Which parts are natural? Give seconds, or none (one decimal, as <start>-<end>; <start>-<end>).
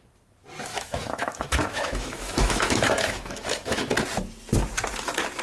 0.0-0.7; 3.9-5.4